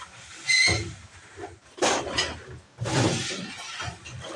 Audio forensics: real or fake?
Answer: real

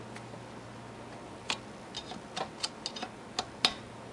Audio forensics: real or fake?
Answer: real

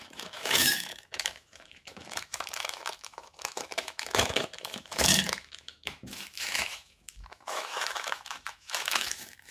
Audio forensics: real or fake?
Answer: fake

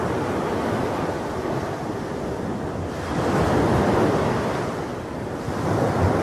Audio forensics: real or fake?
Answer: real